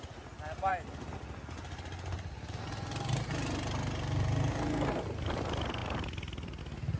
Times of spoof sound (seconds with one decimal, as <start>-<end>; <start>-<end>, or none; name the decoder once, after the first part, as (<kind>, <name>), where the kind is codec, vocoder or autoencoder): none